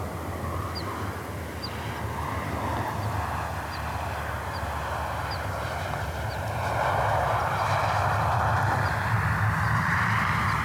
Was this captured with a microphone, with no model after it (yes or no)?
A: yes